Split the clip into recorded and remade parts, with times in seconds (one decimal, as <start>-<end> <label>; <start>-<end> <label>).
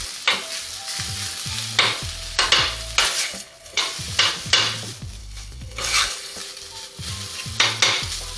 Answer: 0.0-3.2 recorded; 3.2-3.8 remade; 3.8-5.2 recorded; 5.2-6.4 remade; 6.4-8.4 recorded